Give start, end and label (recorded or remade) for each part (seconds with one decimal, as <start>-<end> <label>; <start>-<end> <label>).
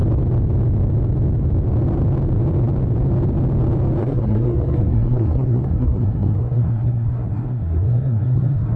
0.0-4.0 recorded; 4.0-8.8 remade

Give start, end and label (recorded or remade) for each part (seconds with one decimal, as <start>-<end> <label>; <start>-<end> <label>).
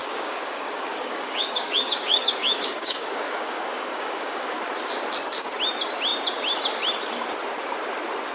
0.0-4.6 remade; 4.6-8.3 recorded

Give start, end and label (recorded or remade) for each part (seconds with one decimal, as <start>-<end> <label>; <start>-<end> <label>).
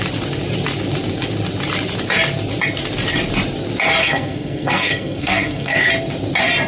0.0-4.0 recorded; 4.0-5.9 remade; 5.9-6.7 recorded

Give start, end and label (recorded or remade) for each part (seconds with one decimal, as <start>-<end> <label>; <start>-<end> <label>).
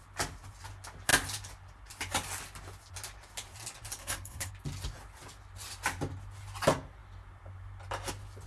0.0-4.0 recorded; 4.0-4.5 remade; 4.5-8.5 recorded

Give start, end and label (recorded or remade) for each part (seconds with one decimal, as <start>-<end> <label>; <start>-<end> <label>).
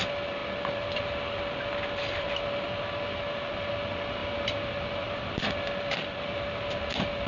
0.0-4.2 recorded; 4.2-6.8 remade; 6.8-7.3 recorded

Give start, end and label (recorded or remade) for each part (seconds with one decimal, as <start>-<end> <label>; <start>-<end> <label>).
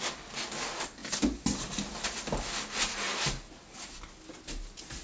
0.0-5.0 recorded